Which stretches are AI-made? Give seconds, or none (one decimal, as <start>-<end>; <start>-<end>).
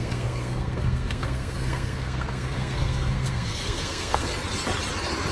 0.0-4.3